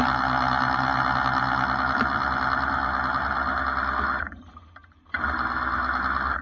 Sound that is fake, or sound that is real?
real